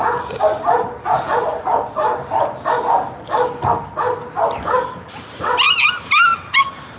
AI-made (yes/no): no